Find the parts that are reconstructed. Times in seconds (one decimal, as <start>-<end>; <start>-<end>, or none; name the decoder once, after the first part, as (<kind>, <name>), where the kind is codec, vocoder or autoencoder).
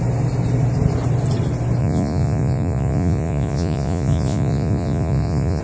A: 1.8-5.6 (vocoder, Vocos)